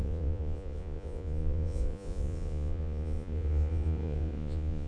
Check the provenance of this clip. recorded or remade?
remade